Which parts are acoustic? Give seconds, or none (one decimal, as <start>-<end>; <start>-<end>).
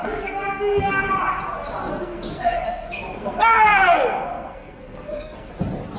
1.0-1.9; 5.5-6.0